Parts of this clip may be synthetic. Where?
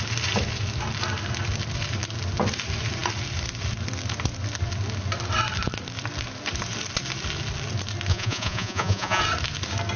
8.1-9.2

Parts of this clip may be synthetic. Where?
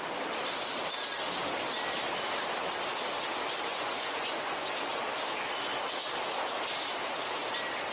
3.7-4.7